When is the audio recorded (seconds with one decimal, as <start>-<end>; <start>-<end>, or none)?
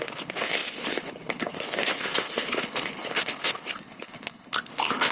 none